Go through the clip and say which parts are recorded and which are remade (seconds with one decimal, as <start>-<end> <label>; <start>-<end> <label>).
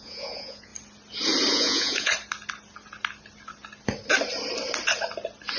0.0-0.7 remade; 0.7-1.5 recorded; 1.5-2.1 remade; 2.1-5.6 recorded